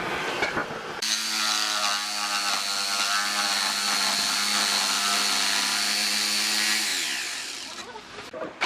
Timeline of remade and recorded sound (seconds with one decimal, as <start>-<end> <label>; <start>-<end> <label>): 0.0-0.6 recorded; 0.6-1.8 remade; 1.8-6.9 recorded; 6.9-8.7 remade